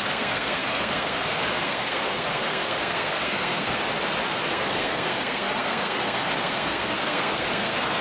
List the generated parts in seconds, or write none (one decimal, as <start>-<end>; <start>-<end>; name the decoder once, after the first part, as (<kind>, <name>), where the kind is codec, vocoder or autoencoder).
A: 0.0-3.8 (codec, SNAC); 4.5-8.0